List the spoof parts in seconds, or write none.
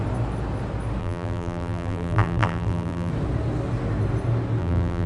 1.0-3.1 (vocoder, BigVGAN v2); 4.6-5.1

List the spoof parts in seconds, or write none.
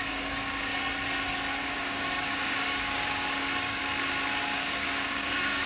0.0-0.7 (codec, DAC); 1.6-3.8; 4.4-5.7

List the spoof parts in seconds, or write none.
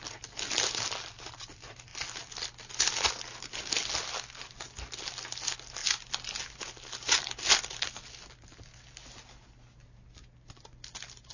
none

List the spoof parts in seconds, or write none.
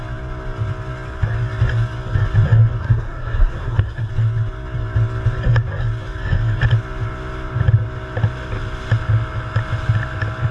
2.8-4.1 (codec, SNAC)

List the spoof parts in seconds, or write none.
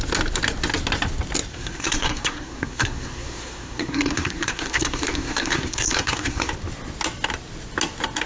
1.5-6.5 (codec, SNAC)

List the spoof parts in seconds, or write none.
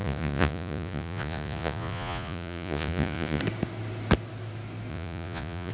0.0-3.4 (vocoder, Vocos); 4.9-5.7